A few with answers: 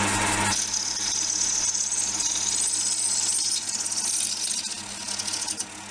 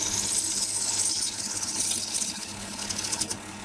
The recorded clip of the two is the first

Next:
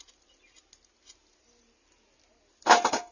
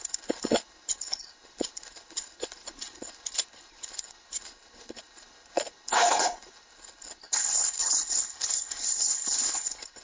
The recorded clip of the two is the first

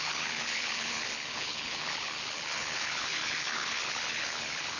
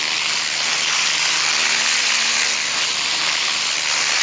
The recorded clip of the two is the second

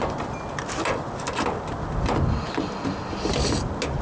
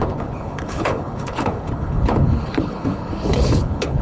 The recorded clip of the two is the first